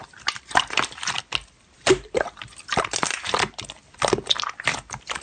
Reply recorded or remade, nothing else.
recorded